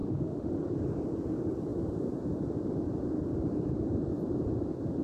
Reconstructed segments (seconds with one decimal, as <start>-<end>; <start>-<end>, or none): 0.0-0.6